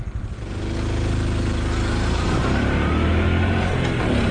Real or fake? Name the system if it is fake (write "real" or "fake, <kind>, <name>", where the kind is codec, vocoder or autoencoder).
real